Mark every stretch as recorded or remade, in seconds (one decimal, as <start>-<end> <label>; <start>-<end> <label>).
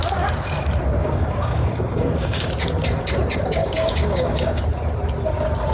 0.0-1.0 recorded; 1.0-2.5 remade; 2.5-3.6 recorded; 3.6-4.6 remade; 4.6-5.7 recorded